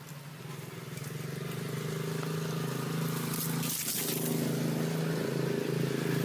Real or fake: real